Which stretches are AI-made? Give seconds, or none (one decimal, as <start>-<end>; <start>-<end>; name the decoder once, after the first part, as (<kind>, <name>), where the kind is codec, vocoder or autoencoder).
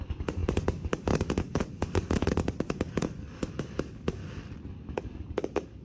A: 0.0-4.2 (codec, DAC); 4.7-5.8